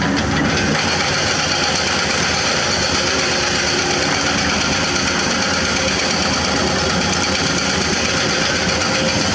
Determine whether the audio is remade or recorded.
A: recorded